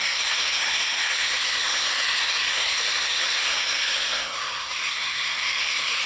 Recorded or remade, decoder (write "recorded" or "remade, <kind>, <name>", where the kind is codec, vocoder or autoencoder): remade, codec, SNAC